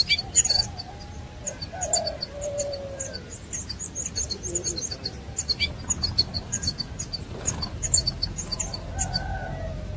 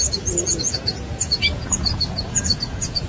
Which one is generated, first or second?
second